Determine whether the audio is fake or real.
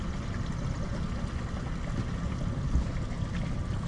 real